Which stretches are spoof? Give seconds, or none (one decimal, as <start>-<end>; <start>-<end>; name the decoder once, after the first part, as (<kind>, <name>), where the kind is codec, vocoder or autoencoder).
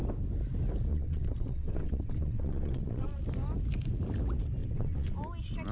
0.9-3.2 (vocoder, WaveNeXt); 4.6-5.2